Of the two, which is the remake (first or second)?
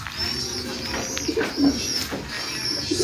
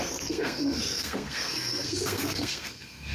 second